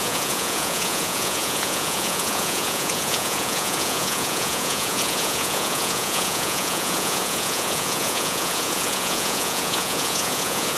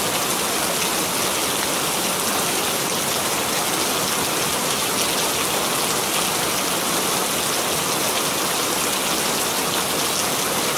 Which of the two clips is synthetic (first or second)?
first